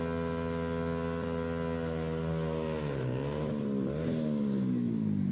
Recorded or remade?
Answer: recorded